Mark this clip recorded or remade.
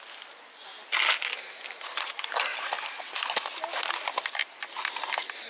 recorded